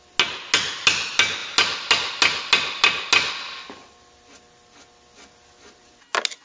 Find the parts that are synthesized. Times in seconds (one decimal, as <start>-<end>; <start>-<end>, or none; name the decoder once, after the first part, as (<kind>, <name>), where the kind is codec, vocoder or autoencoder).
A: none